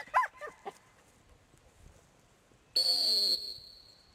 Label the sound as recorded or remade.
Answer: recorded